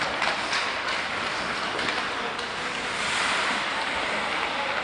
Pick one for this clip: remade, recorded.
recorded